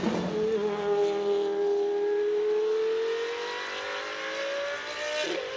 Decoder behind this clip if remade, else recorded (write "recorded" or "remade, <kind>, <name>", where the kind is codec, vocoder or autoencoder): recorded